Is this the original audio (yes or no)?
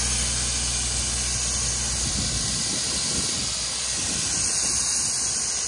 yes